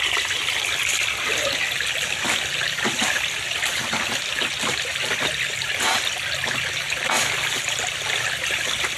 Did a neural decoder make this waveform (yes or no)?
no